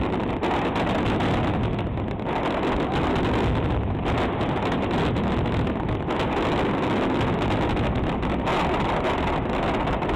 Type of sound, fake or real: real